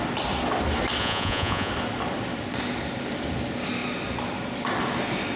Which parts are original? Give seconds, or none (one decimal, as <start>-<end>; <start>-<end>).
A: 0.0-1.0; 1.7-5.4